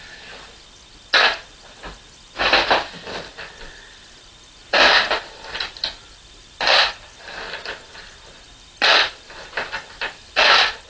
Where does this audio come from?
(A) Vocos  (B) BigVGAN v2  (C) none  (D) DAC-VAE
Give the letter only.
C